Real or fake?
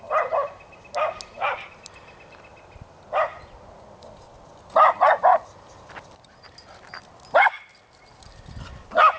real